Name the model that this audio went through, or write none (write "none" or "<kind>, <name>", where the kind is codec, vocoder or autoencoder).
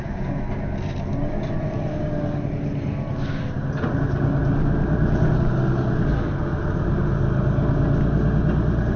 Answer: none